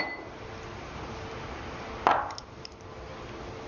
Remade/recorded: recorded